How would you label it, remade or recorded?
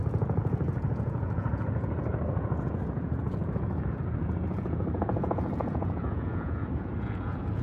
remade